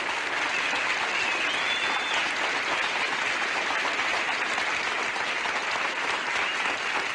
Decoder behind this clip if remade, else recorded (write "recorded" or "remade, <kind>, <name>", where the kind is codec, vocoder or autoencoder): recorded